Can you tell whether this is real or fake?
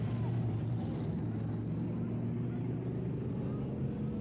real